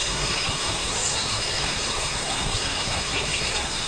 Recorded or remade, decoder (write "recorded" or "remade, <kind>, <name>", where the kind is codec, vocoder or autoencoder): remade, codec, SNAC